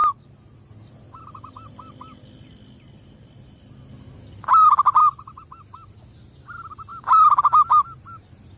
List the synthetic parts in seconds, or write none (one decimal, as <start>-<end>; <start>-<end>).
0.0-0.7; 3.9-4.5; 5.0-5.9; 6.9-7.4